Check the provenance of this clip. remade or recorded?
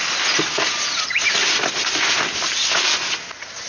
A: recorded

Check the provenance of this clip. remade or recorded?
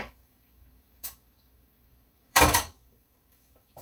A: remade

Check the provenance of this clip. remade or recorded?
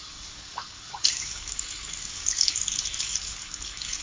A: remade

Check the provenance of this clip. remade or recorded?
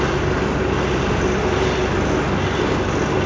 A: recorded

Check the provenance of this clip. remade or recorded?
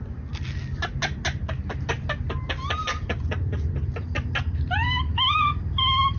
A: recorded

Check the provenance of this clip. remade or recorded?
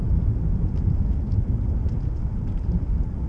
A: recorded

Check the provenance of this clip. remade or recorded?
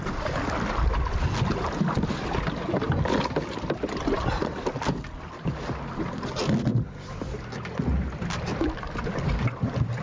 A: recorded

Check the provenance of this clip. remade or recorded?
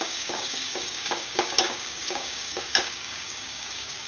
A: remade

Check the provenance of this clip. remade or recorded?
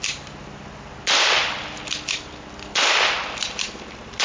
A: recorded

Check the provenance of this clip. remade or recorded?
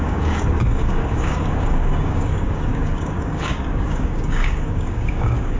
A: remade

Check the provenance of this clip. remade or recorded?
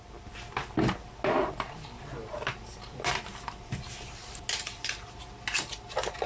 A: recorded